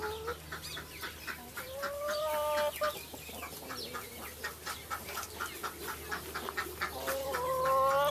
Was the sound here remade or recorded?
recorded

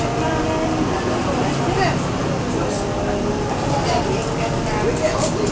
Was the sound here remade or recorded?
recorded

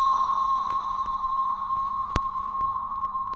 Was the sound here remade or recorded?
remade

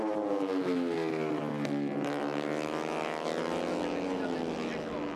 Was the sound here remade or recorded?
recorded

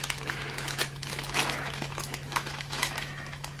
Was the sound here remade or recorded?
remade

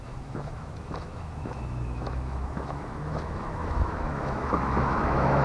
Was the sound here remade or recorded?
remade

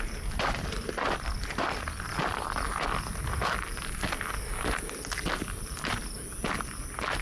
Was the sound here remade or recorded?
recorded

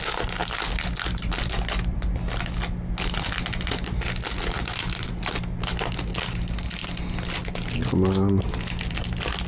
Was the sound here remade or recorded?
recorded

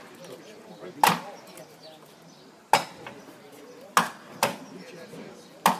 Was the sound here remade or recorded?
recorded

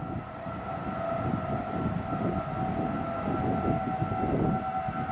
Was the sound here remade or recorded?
recorded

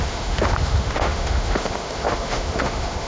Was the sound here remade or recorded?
remade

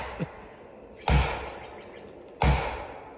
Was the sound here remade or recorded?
recorded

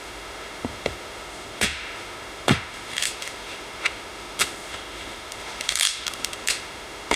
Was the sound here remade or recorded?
remade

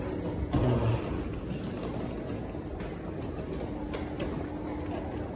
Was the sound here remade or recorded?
recorded